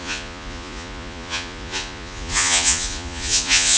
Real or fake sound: fake